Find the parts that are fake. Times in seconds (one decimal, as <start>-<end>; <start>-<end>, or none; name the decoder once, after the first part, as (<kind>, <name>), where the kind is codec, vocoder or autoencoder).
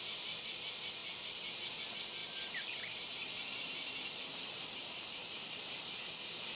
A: 1.0-1.8 (vocoder, BigVGAN v2); 2.2-6.1